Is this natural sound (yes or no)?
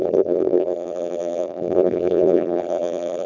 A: no